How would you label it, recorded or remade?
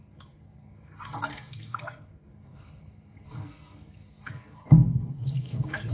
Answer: remade